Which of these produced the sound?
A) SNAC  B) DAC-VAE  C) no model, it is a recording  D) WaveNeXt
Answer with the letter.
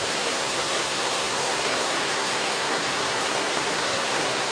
A